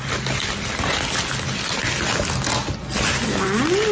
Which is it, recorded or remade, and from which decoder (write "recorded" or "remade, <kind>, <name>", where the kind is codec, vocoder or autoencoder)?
recorded